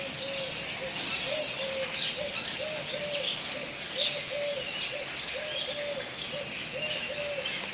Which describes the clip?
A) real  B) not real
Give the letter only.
A